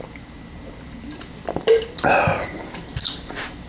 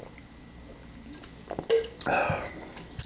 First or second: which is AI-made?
first